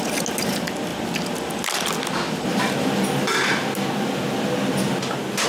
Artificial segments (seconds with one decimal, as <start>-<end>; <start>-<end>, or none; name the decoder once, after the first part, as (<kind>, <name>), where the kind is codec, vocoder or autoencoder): none